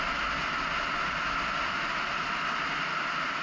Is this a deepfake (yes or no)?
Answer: no